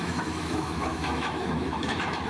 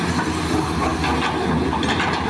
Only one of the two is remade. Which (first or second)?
first